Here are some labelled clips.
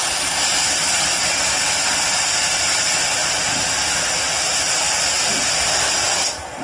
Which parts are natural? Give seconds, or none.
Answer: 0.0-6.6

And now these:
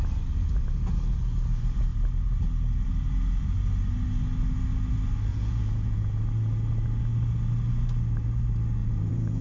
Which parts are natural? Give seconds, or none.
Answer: 0.0-5.3; 6.2-8.8